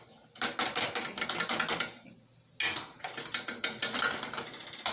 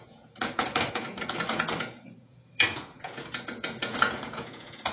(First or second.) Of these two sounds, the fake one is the second